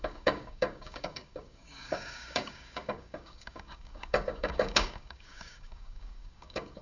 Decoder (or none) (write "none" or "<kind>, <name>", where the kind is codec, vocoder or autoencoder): codec, DAC